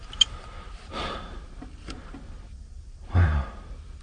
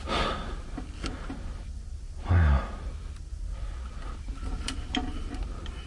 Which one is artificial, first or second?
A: first